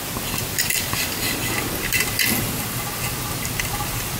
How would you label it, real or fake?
real